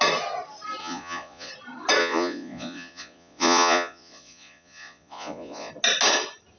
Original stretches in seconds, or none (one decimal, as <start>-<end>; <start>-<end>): 0.0-0.8; 1.5-2.0; 5.7-6.6